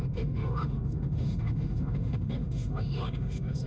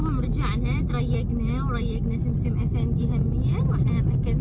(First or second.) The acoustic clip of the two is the second